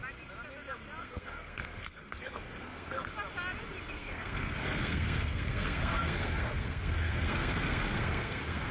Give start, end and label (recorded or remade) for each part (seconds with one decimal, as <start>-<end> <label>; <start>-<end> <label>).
0.0-1.0 recorded; 1.0-3.1 remade; 3.1-3.9 recorded; 3.9-8.7 remade